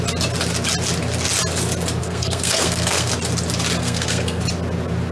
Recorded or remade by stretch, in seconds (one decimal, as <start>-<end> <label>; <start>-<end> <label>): 0.0-2.0 recorded; 2.0-3.1 remade; 3.1-3.8 recorded; 3.8-4.4 remade; 4.4-5.1 recorded